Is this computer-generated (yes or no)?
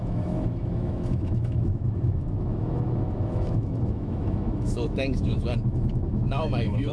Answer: yes